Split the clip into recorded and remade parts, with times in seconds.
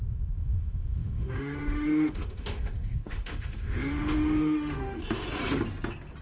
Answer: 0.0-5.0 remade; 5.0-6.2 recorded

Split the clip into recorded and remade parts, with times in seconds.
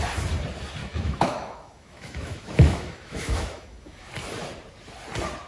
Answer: 0.0-0.8 recorded; 0.8-4.1 remade; 4.1-5.5 recorded